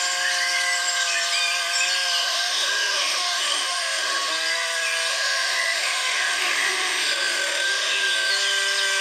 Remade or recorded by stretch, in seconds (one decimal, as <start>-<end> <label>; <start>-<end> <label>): 0.0-2.2 recorded; 2.2-4.3 remade; 4.3-5.1 recorded; 5.1-8.3 remade; 8.3-9.0 recorded